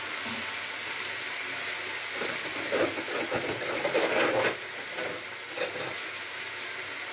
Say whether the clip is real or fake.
real